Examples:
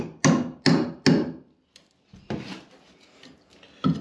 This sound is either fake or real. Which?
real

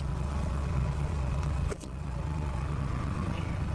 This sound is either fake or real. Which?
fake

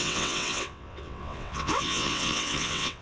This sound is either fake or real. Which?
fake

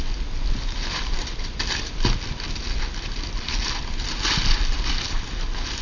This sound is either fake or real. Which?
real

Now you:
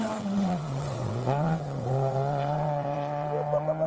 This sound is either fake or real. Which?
fake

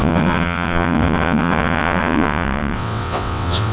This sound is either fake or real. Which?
fake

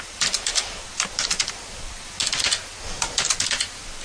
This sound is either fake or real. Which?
real